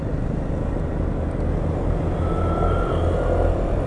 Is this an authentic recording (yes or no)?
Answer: yes